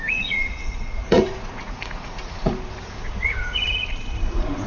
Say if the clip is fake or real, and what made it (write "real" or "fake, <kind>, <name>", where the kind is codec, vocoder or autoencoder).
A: fake, vocoder, Vocos